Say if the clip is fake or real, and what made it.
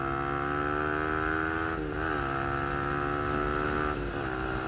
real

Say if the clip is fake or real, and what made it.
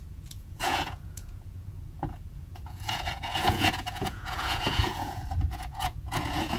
fake, vocoder, Vocos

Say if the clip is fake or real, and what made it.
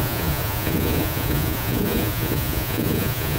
fake, vocoder, Vocos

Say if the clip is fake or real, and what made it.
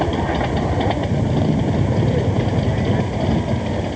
real